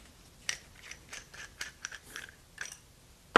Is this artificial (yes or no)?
no